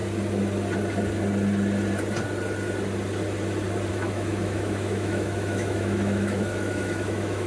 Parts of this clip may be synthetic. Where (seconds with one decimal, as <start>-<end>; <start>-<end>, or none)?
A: 3.9-7.5